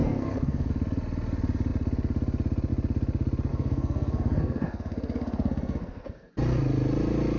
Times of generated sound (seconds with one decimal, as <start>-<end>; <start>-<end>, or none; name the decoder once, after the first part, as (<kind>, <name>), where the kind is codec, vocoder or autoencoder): 0.0-0.7 (codec, SNAC); 3.5-6.3